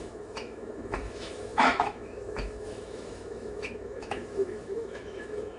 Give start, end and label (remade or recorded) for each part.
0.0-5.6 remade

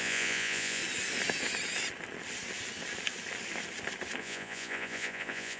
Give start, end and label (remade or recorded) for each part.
0.0-0.8 remade; 0.8-4.2 recorded; 4.2-5.6 remade

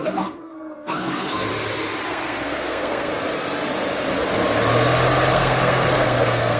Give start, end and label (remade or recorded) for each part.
0.0-1.5 remade; 1.5-2.1 recorded; 2.1-3.1 remade; 3.1-5.3 recorded; 5.3-6.6 remade

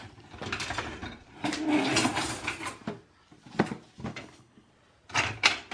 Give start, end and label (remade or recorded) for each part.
0.0-4.1 recorded; 4.1-4.7 remade; 4.7-5.7 recorded

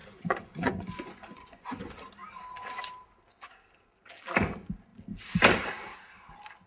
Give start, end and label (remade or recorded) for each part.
0.0-1.8 remade; 1.8-6.7 recorded

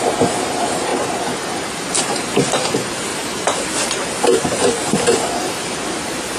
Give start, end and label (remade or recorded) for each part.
0.0-0.9 remade; 0.9-2.0 recorded; 2.0-6.4 remade

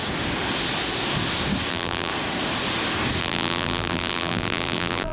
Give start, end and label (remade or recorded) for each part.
0.0-1.7 recorded; 1.7-2.1 remade; 2.1-3.2 recorded; 3.2-5.1 remade

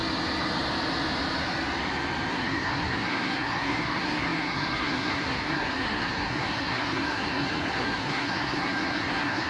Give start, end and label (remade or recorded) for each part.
0.0-2.3 recorded; 2.3-9.5 remade